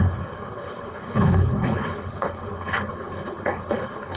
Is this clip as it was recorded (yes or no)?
no